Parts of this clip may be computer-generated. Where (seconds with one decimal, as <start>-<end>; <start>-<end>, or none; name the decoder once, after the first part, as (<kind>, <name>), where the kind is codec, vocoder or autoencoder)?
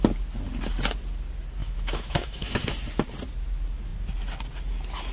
1.6-2.6 (autoencoder, DAC-VAE)